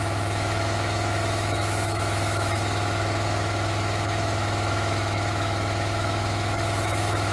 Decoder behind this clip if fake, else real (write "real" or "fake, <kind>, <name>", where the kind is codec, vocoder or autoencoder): fake, autoencoder, DAC-VAE